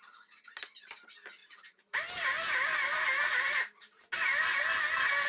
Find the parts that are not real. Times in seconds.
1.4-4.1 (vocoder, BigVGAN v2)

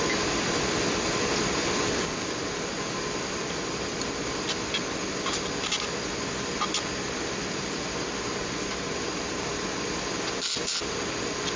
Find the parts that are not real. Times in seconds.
none

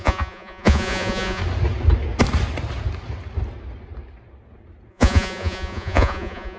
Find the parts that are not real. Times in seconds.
0.0-1.4 (vocoder, Vocos); 4.9-6.6

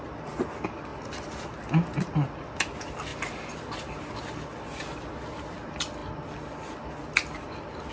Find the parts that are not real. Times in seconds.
none

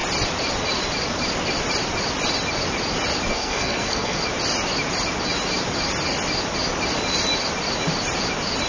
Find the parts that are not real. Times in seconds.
3.3-4.2 (codec, SNAC)